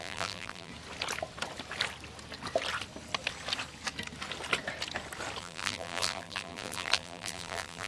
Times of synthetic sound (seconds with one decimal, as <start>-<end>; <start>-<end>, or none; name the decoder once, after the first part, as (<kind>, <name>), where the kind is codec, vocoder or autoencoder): 0.0-0.7 (vocoder, BigVGAN v2); 5.4-7.9